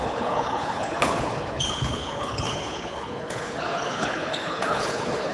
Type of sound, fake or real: fake